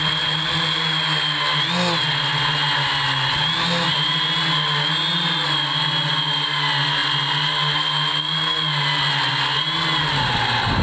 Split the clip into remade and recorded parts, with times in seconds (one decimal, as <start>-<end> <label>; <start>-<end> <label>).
0.0-10.8 recorded

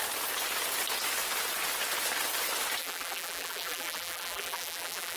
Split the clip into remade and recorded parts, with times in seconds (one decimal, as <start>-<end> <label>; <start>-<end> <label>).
0.0-2.8 recorded; 2.8-5.2 remade

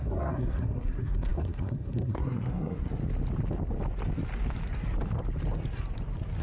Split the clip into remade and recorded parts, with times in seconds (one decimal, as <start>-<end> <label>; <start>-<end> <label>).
0.0-3.0 remade; 3.0-6.4 recorded

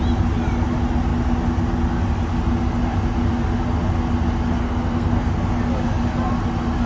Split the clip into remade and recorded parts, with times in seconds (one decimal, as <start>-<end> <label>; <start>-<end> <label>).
0.0-4.6 recorded; 4.6-5.3 remade; 5.3-6.9 recorded

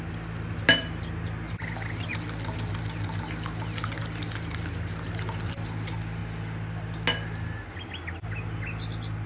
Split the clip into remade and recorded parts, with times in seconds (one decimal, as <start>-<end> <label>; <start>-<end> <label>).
0.0-9.3 recorded

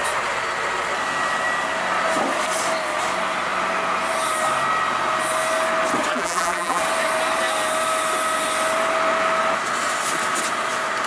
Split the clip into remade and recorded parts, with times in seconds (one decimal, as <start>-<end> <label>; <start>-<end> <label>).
0.0-6.1 recorded; 6.1-6.8 remade; 6.8-11.1 recorded